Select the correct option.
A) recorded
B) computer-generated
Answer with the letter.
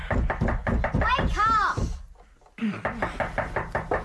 A